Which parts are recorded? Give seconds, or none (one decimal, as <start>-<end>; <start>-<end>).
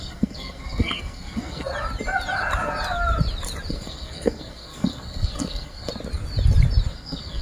1.7-3.7; 5.9-6.9